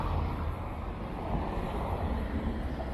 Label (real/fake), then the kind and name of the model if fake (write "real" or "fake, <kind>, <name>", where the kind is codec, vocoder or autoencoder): real